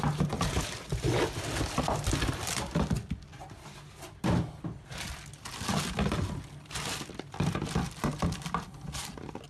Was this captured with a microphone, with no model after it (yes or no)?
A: yes